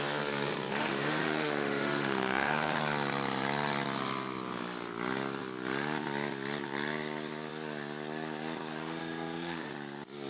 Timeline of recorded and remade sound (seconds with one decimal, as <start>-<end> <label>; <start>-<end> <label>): 0.0-0.7 recorded; 0.7-2.8 remade; 2.8-8.7 recorded; 8.7-9.7 remade; 9.7-10.3 recorded